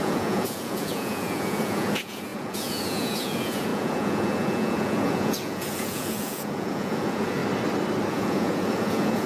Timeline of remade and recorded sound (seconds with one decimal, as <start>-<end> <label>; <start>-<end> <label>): 0.0-7.4 remade; 7.4-8.1 recorded; 8.1-9.3 remade